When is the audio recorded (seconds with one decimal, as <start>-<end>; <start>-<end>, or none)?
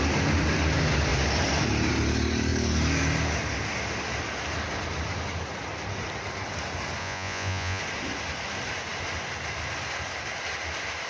0.0-7.0; 7.8-11.1